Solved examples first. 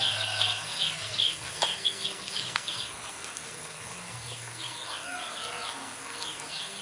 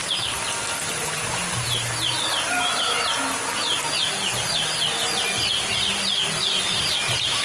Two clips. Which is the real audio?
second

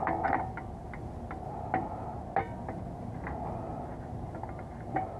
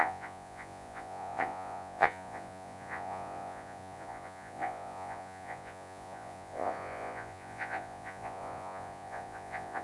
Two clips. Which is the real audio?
first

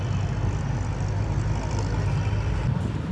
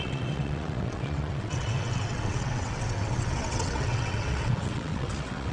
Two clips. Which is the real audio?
first